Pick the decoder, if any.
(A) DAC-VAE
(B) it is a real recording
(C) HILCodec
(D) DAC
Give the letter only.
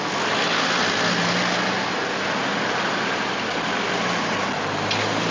B